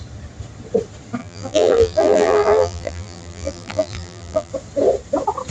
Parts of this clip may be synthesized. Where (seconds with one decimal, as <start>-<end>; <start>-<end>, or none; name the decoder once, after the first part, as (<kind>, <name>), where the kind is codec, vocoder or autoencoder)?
1.2-4.5 (vocoder, BigVGAN v2)